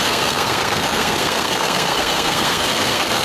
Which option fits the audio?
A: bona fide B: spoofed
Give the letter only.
B